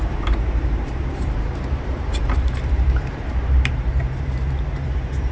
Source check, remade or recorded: remade